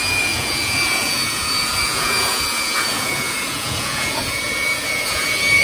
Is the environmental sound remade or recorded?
remade